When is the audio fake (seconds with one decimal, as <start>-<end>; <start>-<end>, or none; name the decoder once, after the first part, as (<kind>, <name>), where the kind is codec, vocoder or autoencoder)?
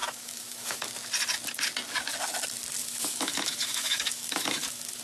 0.0-0.8 (autoencoder, DAC-VAE); 2.8-5.0